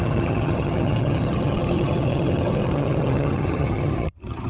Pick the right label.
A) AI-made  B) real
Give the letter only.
A